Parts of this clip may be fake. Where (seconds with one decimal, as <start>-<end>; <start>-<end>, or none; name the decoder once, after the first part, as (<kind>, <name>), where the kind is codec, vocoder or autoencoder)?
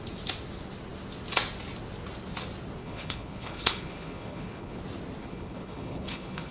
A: 2.8-4.8 (codec, HILCodec); 5.2-6.5